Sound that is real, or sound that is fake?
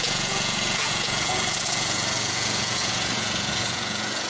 fake